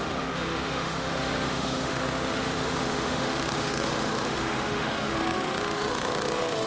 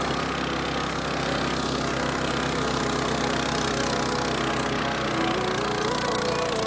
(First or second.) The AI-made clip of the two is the first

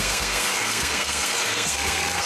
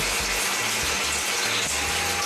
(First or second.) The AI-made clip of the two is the first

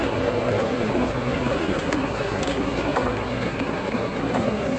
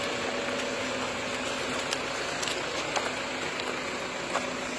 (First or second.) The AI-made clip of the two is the first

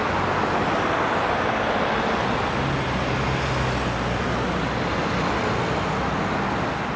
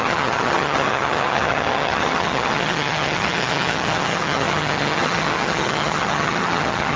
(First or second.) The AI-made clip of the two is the second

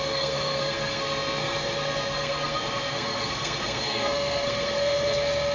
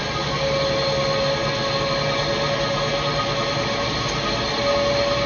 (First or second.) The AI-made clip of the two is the first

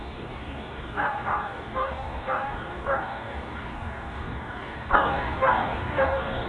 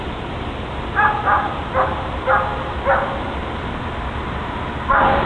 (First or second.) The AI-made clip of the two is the first